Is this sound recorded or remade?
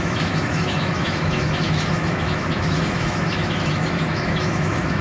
remade